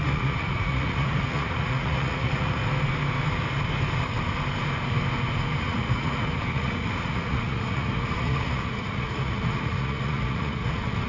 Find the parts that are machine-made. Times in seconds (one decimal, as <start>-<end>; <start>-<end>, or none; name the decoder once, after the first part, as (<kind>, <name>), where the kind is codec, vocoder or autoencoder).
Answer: 0.0-2.6 (vocoder, Vocos); 5.6-11.1